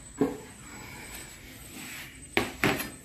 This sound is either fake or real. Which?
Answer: real